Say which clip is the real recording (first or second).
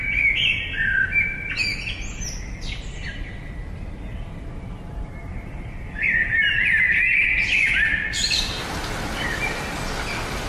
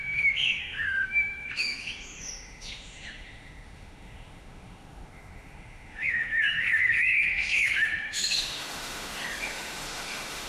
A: first